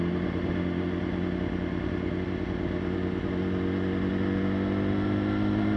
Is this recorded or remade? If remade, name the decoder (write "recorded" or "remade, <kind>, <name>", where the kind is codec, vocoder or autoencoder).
recorded